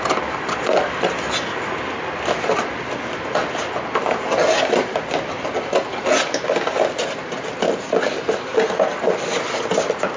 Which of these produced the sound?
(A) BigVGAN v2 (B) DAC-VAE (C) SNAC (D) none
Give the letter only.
D